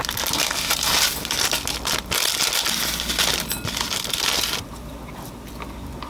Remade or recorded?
recorded